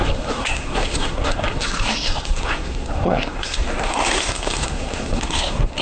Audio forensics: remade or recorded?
remade